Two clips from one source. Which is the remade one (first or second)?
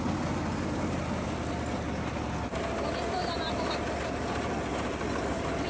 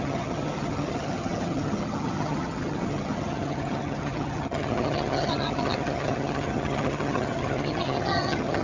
second